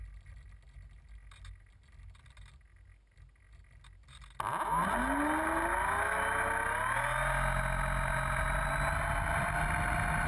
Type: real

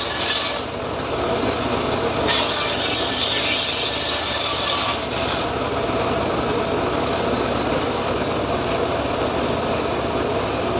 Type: real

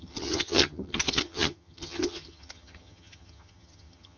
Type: fake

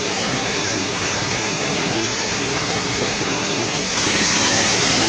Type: fake